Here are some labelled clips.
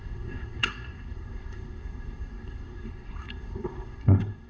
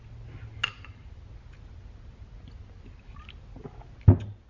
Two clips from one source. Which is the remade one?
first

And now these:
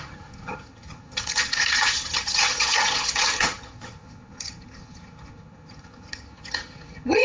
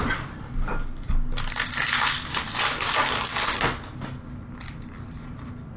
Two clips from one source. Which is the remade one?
first